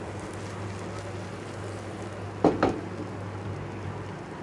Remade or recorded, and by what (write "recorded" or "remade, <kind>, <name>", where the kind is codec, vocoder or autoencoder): recorded